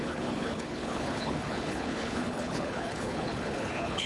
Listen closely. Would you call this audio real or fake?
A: fake